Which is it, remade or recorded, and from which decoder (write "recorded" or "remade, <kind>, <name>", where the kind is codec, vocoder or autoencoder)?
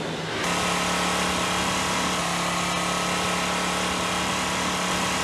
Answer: recorded